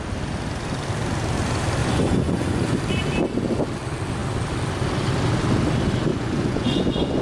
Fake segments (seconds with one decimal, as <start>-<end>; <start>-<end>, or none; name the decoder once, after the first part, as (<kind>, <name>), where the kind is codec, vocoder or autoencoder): 1.8-2.8 (vocoder, Vocos); 6.1-7.2